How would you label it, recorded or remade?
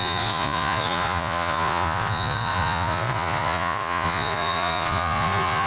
remade